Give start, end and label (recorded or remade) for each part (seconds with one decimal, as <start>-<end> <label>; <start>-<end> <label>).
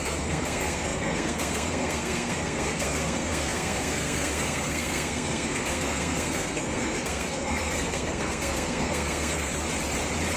0.0-9.5 remade; 9.5-10.4 recorded